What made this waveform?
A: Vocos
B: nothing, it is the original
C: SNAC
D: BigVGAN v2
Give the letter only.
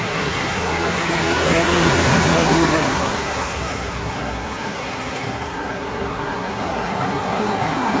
C